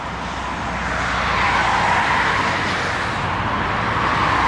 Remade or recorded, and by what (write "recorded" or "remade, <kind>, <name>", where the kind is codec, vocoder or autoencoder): recorded